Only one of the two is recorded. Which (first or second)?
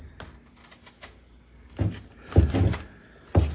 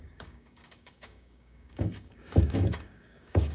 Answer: first